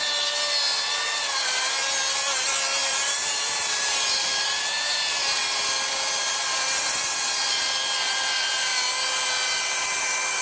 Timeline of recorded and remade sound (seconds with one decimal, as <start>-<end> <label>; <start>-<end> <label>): 0.0-2.8 recorded; 2.8-5.4 remade; 5.4-10.4 recorded